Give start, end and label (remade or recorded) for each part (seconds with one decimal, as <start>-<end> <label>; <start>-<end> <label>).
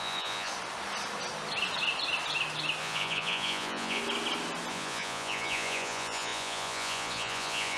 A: 0.0-0.5 remade; 0.5-2.8 recorded; 2.8-4.0 remade; 4.0-4.7 recorded; 4.7-7.8 remade